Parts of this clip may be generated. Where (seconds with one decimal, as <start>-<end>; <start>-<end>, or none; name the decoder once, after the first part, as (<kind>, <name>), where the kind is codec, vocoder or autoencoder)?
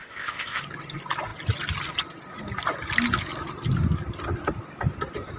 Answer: 0.0-0.6 (codec, ZipCodec)